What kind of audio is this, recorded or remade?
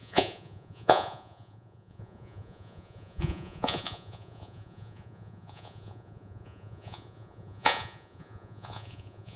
remade